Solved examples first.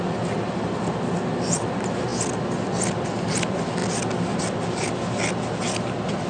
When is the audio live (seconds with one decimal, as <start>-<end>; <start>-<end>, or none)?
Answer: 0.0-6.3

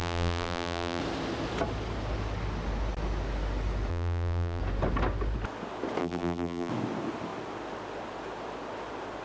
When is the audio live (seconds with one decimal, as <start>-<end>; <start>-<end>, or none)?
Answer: 1.0-3.9; 4.6-6.0; 6.7-9.2

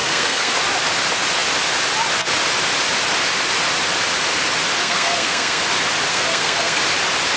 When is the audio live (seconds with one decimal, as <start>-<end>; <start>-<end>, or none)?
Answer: 0.5-4.8; 5.6-6.1; 6.8-7.4

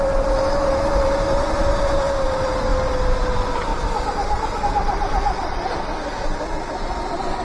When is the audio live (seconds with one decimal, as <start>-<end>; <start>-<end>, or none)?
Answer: 0.0-7.4